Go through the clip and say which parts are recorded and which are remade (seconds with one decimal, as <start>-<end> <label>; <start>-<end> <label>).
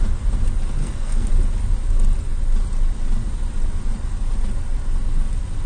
0.0-0.8 recorded; 0.8-1.3 remade; 1.3-5.7 recorded